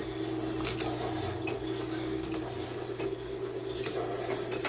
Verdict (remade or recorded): recorded